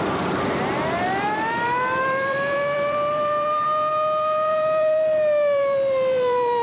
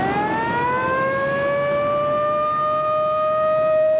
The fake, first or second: first